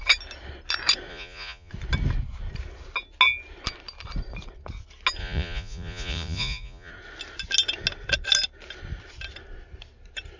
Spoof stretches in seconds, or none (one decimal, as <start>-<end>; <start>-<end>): 1.1-1.7; 5.2-6.9

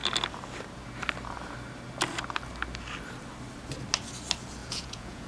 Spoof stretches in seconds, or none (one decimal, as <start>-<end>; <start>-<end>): 4.6-5.3

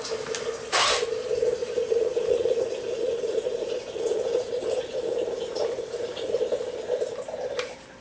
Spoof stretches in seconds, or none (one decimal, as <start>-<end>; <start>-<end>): 1.6-6.4

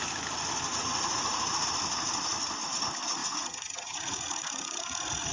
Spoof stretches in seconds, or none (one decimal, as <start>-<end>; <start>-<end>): 0.7-1.4; 3.2-5.3

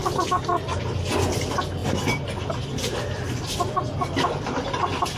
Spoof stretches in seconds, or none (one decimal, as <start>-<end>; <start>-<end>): none

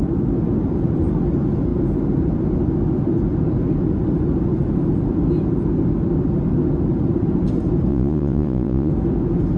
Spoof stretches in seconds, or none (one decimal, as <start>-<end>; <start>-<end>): 7.9-8.9

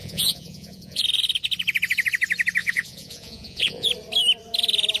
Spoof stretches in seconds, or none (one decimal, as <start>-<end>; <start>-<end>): 0.0-1.0; 2.6-3.9